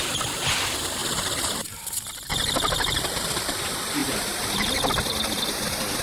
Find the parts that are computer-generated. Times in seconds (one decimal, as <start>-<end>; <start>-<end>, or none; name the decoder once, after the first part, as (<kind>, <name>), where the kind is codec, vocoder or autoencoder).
4.0-4.9 (vocoder, BigVGAN v2)